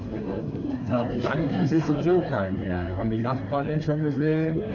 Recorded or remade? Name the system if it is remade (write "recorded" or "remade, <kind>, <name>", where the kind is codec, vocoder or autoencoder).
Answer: remade, codec, SNAC